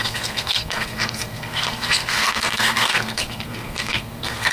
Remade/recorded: remade